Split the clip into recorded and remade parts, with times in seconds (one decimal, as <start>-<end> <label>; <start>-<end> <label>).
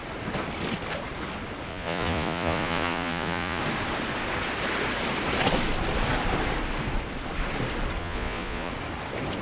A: 0.0-1.7 recorded; 1.7-3.6 remade; 3.6-8.0 recorded; 8.0-8.7 remade; 8.7-9.4 recorded